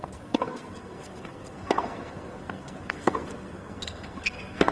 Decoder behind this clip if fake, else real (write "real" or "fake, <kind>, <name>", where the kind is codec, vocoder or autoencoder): fake, codec, SNAC